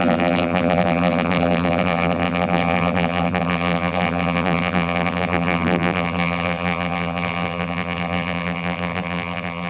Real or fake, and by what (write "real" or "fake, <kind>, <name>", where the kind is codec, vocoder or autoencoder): fake, vocoder, BigVGAN v2